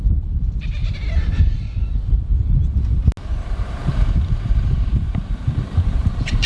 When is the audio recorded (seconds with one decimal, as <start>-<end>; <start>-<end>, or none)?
0.8-3.3